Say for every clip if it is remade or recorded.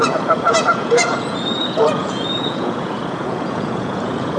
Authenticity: remade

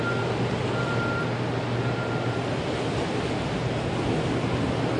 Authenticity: recorded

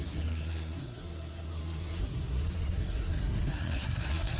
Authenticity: remade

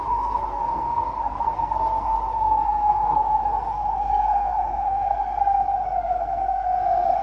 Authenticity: remade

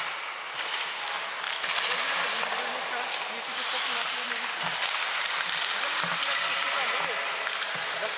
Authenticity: recorded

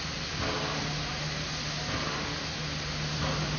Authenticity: recorded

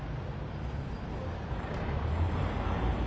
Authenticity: recorded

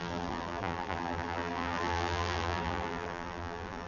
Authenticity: remade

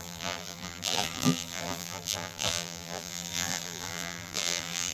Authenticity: remade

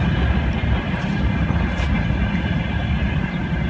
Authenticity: recorded